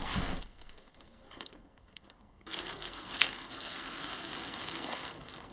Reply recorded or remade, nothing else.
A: remade